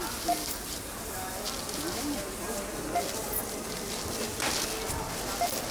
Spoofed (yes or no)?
no